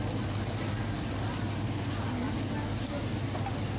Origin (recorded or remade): recorded